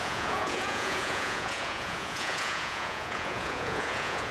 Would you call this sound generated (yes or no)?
yes